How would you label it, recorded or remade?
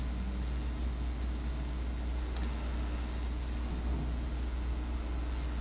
recorded